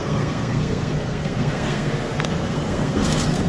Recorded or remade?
remade